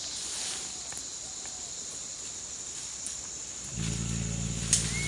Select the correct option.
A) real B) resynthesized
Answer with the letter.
A